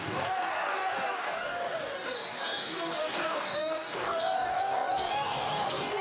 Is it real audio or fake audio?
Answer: fake